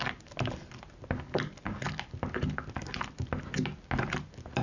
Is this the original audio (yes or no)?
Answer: yes